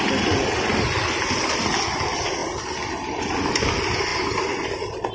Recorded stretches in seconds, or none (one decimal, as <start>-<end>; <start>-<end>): 0.0-5.1